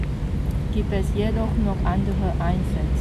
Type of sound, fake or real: real